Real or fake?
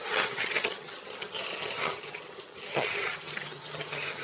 fake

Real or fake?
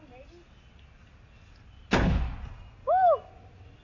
real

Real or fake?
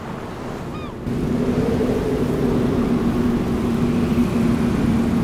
real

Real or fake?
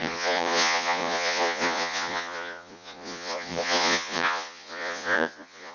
fake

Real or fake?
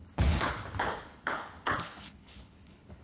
fake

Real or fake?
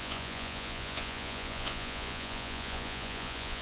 fake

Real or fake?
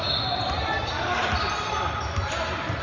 real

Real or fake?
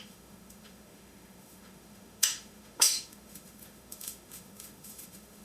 fake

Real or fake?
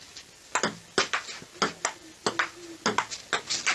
real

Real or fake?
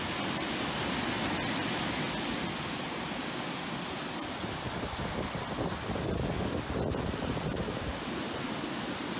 real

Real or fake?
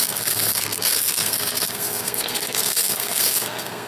fake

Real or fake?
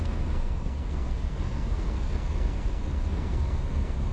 fake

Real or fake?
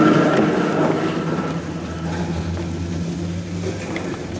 real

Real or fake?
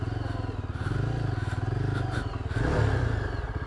real